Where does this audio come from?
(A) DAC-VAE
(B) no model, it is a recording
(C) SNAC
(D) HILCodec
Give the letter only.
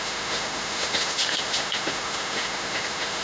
A